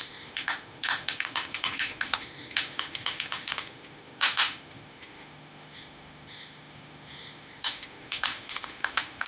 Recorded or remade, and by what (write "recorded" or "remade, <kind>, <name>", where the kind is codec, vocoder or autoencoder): remade, autoencoder, DAC-VAE